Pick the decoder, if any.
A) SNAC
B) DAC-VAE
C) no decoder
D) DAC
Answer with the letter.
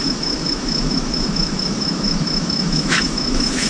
B